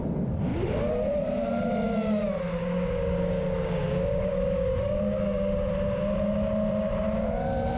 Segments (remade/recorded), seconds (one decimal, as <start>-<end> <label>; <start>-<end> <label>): 0.0-2.6 recorded; 2.6-5.7 remade; 5.7-7.8 recorded